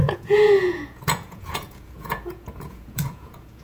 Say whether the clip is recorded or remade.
remade